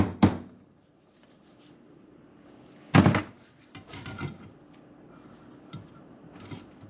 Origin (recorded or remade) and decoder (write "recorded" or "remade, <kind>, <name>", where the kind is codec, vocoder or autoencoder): recorded